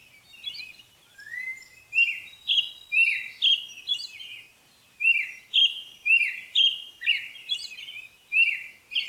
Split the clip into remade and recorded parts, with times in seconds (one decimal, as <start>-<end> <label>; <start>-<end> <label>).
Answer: 0.0-2.7 remade; 2.7-3.9 recorded; 3.9-7.7 remade; 7.7-9.1 recorded